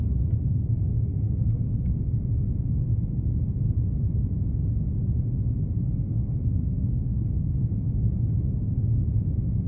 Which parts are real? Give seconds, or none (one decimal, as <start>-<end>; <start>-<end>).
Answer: 0.0-0.7; 1.6-5.9; 7.6-9.7